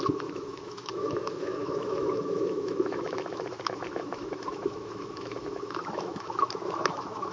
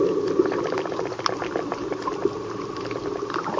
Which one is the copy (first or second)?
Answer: first